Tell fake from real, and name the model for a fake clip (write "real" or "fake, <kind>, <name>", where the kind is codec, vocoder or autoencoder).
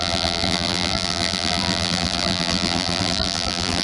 fake, vocoder, BigVGAN v2